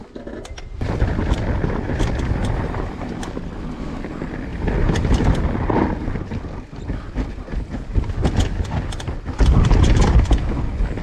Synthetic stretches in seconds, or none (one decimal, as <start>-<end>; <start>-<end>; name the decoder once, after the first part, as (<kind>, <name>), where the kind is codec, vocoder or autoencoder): 2.4-3.4 (vocoder, BigVGAN v2); 4.5-5.4